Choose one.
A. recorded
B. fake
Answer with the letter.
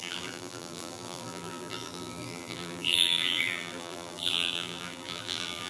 B